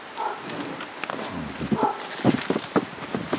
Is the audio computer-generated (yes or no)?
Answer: no